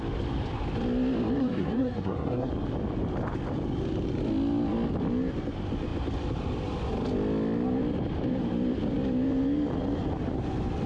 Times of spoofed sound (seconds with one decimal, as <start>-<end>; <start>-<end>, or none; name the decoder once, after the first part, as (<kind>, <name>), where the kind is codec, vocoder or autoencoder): 1.4-2.5 (codec, SNAC)